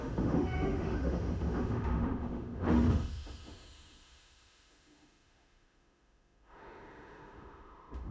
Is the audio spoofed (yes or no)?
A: yes